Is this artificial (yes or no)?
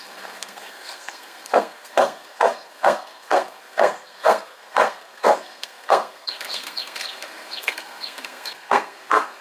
yes